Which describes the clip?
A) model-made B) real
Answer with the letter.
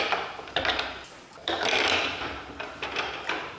A